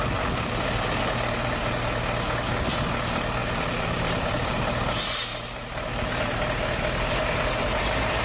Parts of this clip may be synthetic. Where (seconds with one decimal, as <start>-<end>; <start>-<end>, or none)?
3.4-4.5; 5.3-8.2